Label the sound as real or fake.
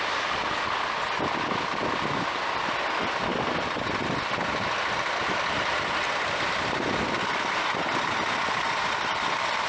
real